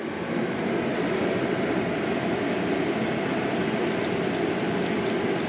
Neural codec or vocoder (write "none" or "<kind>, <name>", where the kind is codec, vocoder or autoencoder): none